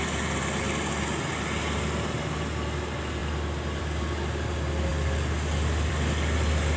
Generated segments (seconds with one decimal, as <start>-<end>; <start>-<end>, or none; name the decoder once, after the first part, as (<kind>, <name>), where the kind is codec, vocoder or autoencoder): none

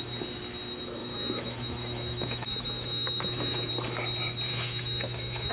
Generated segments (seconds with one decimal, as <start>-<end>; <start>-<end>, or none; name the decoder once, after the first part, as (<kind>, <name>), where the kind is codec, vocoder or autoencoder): 1.0-3.7 (autoencoder, DAC-VAE); 4.5-5.5